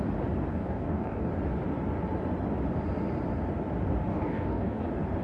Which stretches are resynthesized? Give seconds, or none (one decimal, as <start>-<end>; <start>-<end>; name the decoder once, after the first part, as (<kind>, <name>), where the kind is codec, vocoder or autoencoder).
0.5-1.3 (codec, DAC); 4.1-4.8